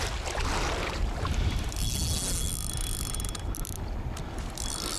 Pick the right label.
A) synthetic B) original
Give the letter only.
B